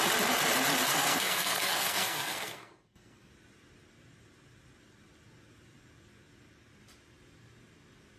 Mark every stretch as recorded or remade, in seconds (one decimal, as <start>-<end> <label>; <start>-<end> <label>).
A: 0.0-0.9 recorded; 0.9-3.3 remade; 3.3-8.2 recorded